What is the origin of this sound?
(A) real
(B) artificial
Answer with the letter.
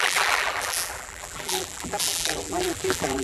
B